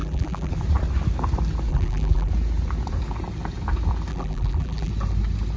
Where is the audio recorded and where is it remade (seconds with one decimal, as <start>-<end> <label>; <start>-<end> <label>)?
0.0-0.5 remade; 0.5-1.7 recorded; 1.7-2.3 remade; 2.3-4.1 recorded; 4.1-4.9 remade; 4.9-5.6 recorded